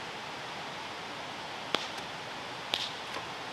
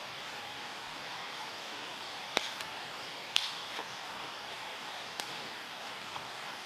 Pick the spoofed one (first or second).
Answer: second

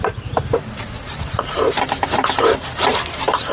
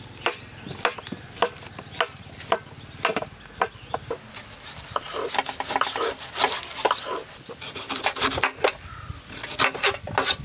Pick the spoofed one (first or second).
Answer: first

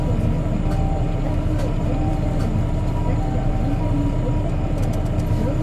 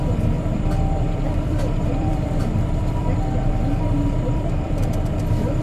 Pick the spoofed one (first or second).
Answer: second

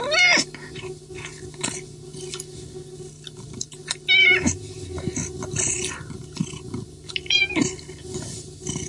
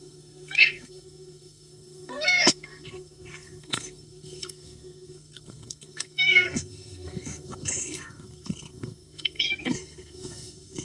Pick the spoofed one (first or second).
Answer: second